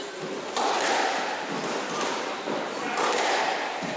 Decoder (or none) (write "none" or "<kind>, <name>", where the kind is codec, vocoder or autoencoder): none